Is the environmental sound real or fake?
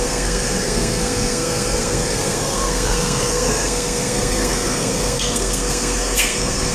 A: fake